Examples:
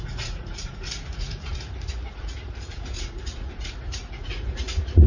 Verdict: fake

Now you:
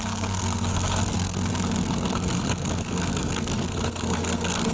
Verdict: fake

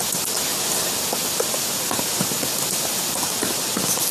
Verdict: real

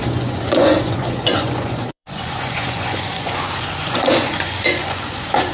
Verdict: fake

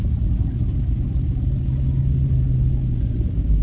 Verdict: real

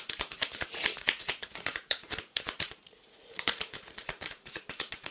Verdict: fake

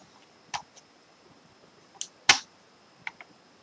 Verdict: real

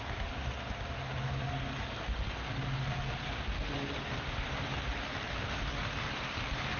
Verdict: real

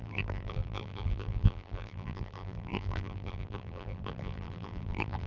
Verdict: fake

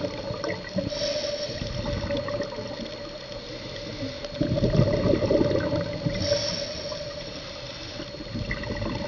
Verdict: real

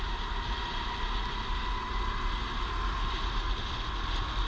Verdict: real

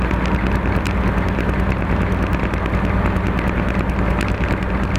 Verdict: real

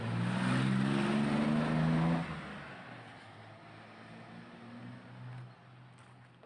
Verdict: real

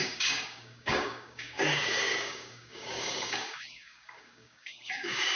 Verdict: fake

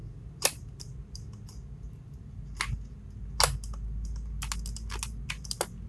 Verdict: real